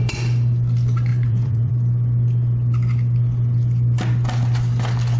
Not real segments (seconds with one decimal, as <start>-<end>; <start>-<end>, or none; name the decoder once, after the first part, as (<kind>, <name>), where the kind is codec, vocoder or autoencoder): 1.1-1.7 (vocoder, Vocos)